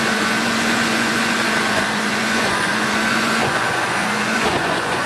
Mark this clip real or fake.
fake